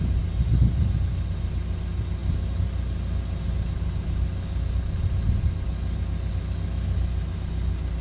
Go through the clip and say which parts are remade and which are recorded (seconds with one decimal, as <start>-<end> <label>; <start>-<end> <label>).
0.0-8.0 recorded

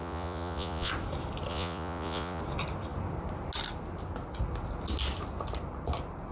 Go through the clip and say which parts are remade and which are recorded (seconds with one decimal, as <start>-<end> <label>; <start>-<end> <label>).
0.0-0.9 remade; 0.9-1.5 recorded; 1.5-2.4 remade; 2.4-6.3 recorded

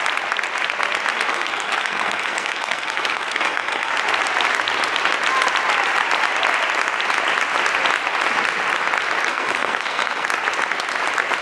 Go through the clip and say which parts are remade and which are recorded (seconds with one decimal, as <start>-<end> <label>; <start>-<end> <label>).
0.0-1.3 recorded; 1.3-3.9 remade; 3.9-9.3 recorded; 9.3-10.3 remade; 10.3-11.4 recorded

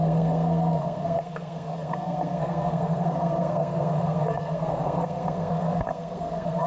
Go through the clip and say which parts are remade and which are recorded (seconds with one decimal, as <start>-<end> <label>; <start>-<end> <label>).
0.0-6.7 remade

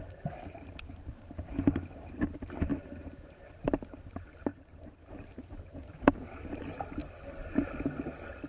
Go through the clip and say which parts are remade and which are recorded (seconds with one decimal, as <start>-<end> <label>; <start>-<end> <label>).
0.0-7.0 remade; 7.0-8.5 recorded